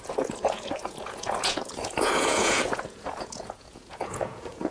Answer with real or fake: fake